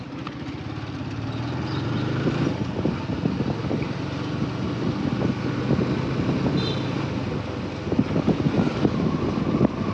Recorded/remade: recorded